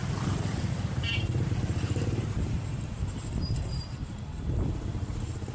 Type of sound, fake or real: fake